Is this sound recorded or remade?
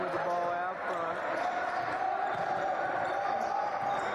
recorded